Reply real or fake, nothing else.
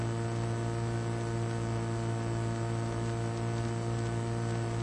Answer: real